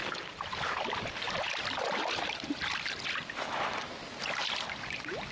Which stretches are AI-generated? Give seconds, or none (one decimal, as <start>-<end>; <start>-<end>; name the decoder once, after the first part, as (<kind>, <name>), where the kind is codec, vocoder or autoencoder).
none